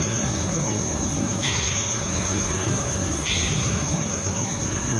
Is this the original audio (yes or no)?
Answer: no